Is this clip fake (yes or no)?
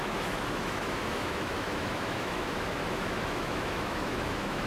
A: yes